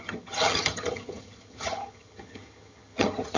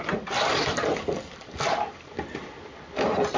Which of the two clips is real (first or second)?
second